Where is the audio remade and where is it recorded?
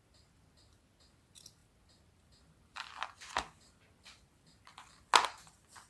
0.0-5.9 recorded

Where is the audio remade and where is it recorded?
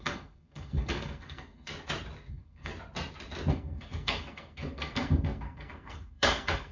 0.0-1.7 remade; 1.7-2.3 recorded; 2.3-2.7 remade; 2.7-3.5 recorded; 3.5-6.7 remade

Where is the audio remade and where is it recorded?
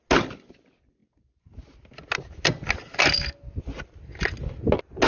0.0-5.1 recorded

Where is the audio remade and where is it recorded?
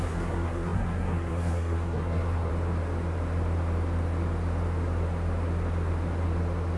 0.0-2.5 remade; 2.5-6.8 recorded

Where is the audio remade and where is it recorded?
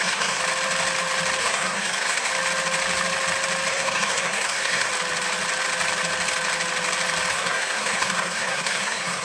0.0-0.4 remade; 0.4-1.4 recorded; 1.4-2.3 remade; 2.3-3.7 recorded; 3.7-4.9 remade; 4.9-7.3 recorded; 7.3-9.2 remade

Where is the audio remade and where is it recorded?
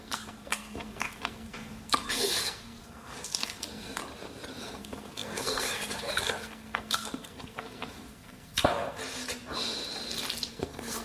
0.0-4.0 remade; 4.0-4.6 recorded; 4.6-9.0 remade; 9.0-10.5 recorded; 10.5-11.0 remade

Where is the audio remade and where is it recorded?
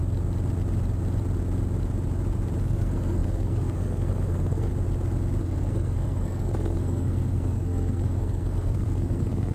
0.0-2.6 recorded; 2.6-4.7 remade; 4.7-5.4 recorded; 5.4-9.5 remade